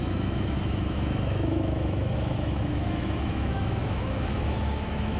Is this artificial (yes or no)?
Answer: yes